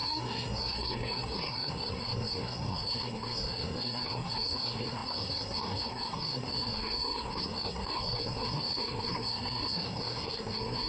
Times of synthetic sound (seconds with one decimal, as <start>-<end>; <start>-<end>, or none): 0.0-10.9